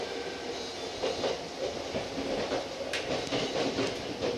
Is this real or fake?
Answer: real